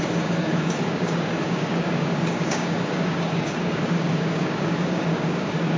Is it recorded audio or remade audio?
remade